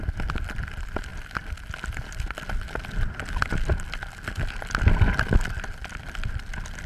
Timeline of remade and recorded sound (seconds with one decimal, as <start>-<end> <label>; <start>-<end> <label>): 0.0-6.9 recorded